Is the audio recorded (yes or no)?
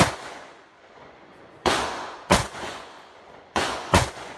no